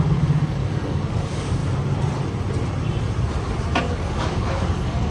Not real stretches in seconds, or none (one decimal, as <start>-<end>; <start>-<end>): 0.0-1.6; 3.8-5.1